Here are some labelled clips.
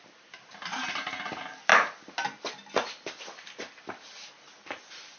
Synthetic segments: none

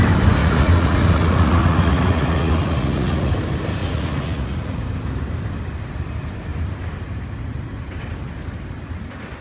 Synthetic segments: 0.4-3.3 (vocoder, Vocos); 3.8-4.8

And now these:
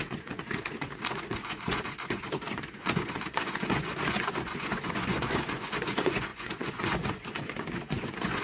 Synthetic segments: 0.0-8.4 (vocoder, Vocos)

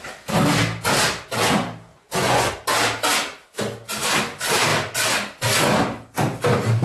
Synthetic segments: 1.9-2.5 (vocoder, Vocos)